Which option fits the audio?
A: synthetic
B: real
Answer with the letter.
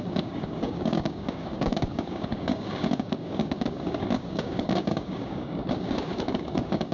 A